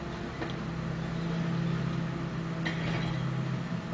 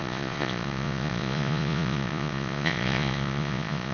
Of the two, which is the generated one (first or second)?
second